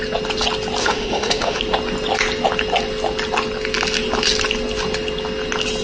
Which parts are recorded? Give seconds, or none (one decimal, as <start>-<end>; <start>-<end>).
0.0-0.8; 1.6-5.8